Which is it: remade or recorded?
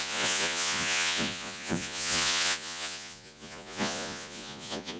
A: remade